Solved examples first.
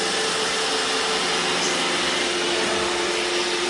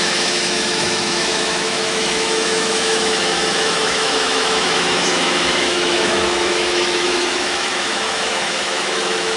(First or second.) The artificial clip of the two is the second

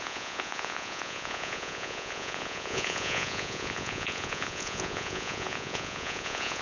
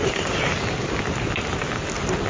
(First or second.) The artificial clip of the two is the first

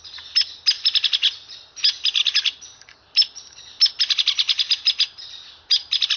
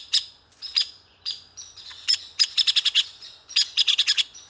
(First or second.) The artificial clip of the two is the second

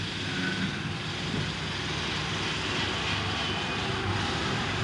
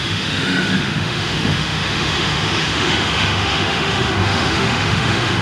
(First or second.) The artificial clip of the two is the second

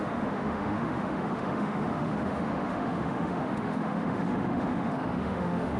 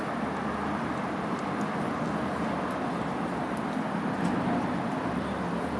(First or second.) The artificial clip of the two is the first